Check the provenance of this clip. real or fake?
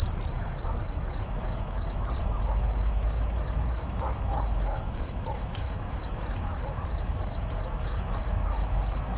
fake